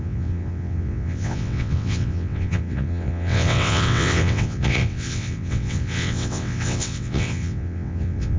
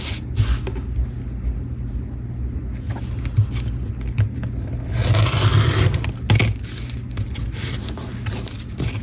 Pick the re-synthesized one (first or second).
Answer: first